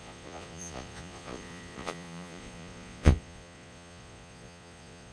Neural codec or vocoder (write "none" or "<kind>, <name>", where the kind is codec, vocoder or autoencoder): vocoder, Vocos